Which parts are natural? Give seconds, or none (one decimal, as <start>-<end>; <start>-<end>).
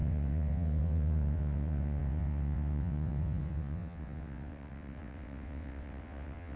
none